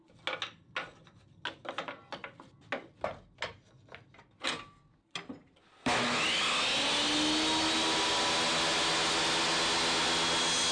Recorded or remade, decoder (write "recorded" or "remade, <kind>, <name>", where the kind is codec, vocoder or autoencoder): recorded